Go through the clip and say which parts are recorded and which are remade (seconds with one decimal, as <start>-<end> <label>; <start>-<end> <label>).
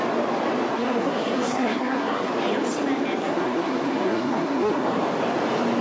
0.0-0.7 recorded; 0.7-2.3 remade; 2.3-3.2 recorded; 3.2-5.0 remade; 5.0-5.8 recorded